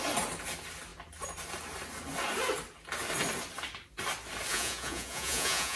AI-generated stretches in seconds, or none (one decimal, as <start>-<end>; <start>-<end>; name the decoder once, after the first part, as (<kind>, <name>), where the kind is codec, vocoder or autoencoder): 4.5-5.8 (vocoder, Vocos)